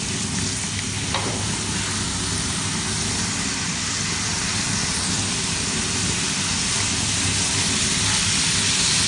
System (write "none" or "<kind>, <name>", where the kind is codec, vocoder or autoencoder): none